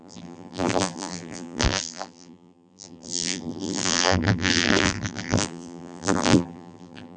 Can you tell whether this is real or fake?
fake